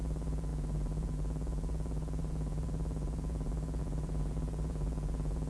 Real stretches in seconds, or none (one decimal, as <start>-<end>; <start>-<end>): none